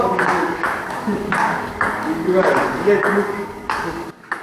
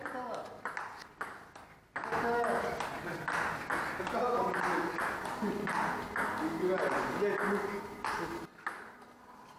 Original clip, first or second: second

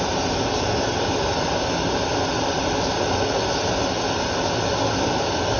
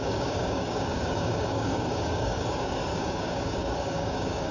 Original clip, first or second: first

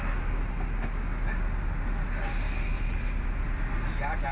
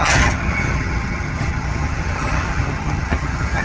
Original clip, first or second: first